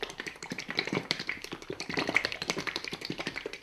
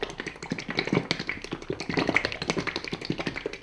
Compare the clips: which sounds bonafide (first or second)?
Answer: second